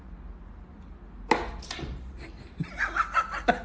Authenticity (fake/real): real